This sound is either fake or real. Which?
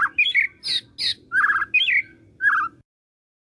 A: real